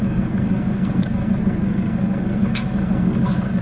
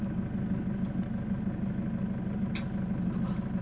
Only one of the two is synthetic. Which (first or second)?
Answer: first